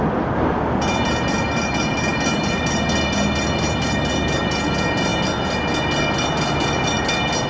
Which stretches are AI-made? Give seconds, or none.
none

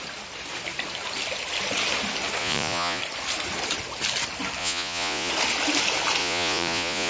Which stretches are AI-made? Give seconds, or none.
2.4-3.0; 4.6-5.3; 6.2-7.1

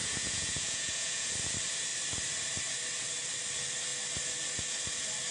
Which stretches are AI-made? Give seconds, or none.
0.0-1.3

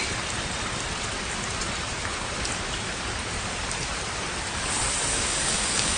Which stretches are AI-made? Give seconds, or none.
5.1-6.0

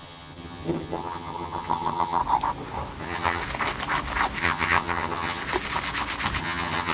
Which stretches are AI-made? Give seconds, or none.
0.0-2.2; 3.0-3.4; 4.4-5.4; 6.4-6.9

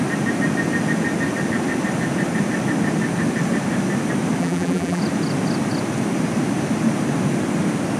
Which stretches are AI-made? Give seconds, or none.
4.4-5.0

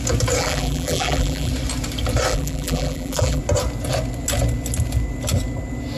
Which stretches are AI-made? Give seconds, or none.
0.4-1.5; 2.3-3.4

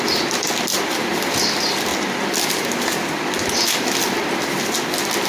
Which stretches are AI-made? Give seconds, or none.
none